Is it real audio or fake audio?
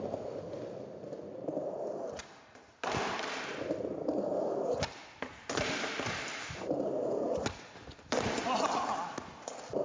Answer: real